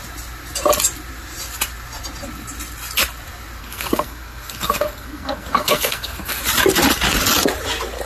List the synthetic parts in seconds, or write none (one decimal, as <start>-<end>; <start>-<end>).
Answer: 3.6-6.4